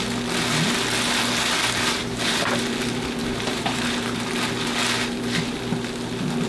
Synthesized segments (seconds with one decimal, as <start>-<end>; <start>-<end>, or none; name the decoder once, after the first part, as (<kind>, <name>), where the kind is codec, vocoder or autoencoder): 2.0-2.6 (vocoder, BigVGAN v2); 3.2-4.3